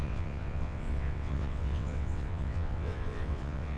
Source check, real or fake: fake